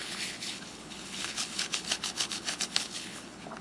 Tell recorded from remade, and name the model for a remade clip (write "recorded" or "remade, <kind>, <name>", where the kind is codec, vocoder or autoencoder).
remade, codec, HILCodec